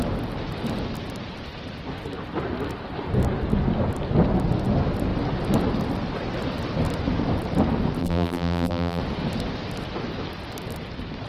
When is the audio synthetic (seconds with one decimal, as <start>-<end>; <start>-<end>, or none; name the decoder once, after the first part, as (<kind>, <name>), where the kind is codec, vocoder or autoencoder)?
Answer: 8.0-9.0 (vocoder, BigVGAN v2)